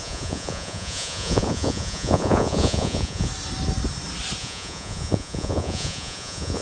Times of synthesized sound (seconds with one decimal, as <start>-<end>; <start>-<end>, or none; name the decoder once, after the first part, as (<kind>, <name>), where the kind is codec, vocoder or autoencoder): 0.0-3.3 (vocoder, Vocos); 4.4-6.6